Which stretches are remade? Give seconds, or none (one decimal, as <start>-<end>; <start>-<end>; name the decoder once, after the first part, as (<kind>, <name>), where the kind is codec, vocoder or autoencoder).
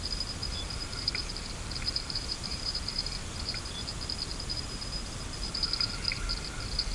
0.4-3.1 (vocoder, BigVGAN v2)